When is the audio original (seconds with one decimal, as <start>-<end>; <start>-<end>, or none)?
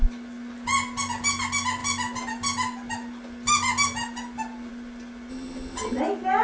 0.0-5.3; 6.0-6.4